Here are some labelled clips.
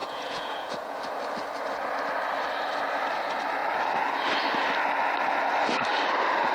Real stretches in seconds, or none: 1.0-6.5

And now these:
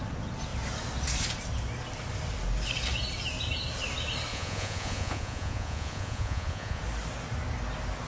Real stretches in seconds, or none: 0.0-4.3; 6.8-8.1

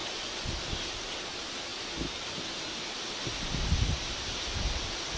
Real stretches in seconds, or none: 0.5-5.2

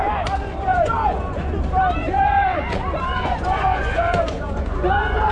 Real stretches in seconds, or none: 0.0-0.7; 1.6-2.0